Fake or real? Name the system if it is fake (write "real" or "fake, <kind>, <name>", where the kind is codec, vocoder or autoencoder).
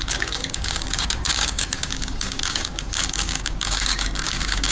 fake, codec, DAC